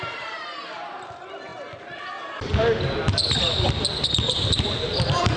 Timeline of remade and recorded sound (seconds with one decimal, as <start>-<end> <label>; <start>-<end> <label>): 0.0-2.5 remade; 2.5-4.9 recorded; 4.9-5.4 remade